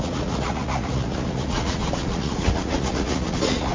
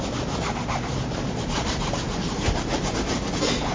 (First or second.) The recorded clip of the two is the second